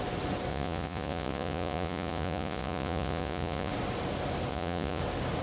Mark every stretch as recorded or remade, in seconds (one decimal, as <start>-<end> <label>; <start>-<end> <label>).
0.0-0.5 recorded; 0.5-3.7 remade; 3.7-4.5 recorded; 4.5-5.0 remade; 5.0-5.4 recorded